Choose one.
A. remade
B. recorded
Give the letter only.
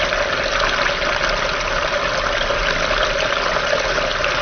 B